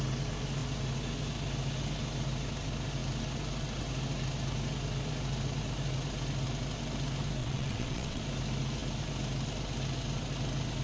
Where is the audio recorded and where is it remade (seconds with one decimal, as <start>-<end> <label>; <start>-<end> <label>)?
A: 0.0-7.4 recorded; 7.4-8.2 remade; 8.2-10.8 recorded